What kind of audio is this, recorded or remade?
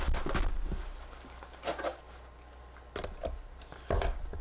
recorded